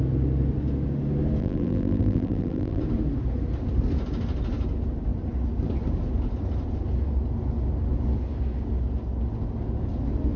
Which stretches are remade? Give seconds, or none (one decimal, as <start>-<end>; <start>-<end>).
1.4-2.8